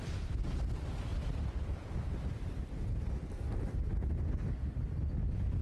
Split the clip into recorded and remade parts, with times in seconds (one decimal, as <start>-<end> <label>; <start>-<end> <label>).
0.0-5.6 recorded